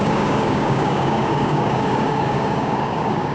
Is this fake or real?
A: fake